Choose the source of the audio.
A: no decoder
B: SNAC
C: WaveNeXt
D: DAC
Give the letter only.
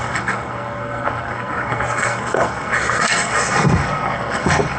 B